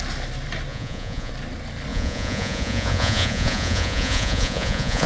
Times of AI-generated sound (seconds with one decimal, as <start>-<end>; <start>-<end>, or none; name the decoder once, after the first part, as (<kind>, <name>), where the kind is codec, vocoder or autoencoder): 0.7-1.3 (vocoder, Vocos); 1.9-5.1